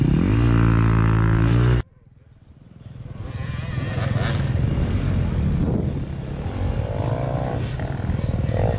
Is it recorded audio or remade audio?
recorded